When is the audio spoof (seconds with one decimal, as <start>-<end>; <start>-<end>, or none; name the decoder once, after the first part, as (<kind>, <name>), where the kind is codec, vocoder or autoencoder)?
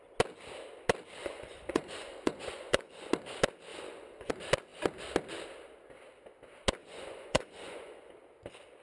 1.2-3.1 (vocoder, Vocos); 3.7-4.3; 6.8-8.1